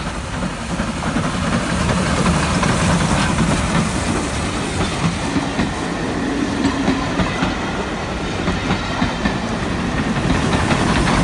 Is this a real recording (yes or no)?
yes